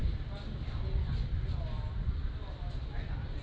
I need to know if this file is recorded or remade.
recorded